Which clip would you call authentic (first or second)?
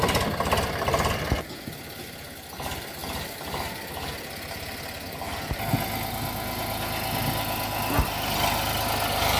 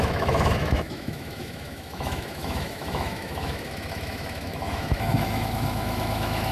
first